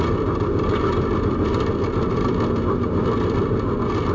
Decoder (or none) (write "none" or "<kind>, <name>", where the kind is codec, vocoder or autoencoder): none